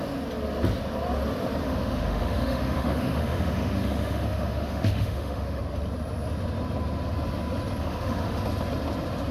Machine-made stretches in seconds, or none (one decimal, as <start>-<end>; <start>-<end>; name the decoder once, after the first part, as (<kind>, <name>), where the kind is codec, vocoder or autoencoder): 1.6-5.6 (autoencoder, DAC-VAE); 7.8-8.4